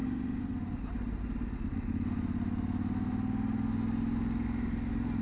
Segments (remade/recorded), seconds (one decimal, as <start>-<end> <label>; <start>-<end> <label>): 0.0-5.2 recorded